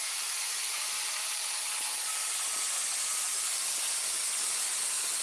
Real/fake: real